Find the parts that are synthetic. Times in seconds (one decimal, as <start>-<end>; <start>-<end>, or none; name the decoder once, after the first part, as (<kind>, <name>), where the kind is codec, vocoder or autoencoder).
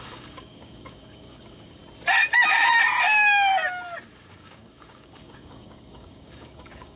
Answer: 0.0-1.8 (codec, DAC); 3.0-3.5; 4.3-7.0